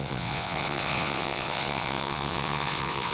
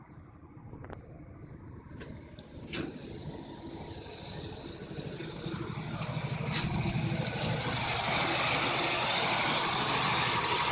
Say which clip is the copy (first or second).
first